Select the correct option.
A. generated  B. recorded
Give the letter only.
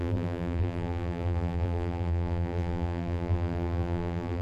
A